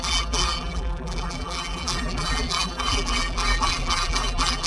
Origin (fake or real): fake